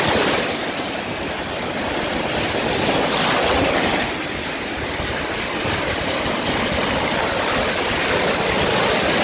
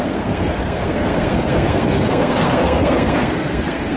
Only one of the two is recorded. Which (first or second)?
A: first